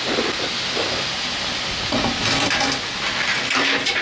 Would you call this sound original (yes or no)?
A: yes